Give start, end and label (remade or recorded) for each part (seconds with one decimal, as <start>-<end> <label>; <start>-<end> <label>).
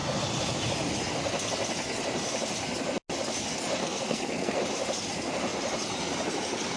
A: 0.0-3.8 recorded; 3.8-4.6 remade; 4.6-6.8 recorded